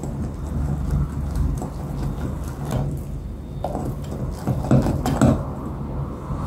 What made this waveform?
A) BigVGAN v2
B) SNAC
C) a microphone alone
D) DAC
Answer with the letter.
C